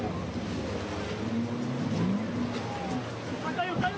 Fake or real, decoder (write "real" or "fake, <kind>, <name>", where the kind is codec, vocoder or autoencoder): real